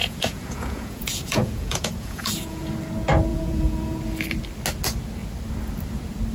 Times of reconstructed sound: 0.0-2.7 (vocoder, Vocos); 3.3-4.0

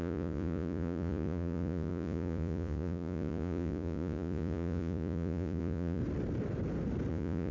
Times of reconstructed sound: 0.0-6.0 (vocoder, Vocos); 7.1-7.5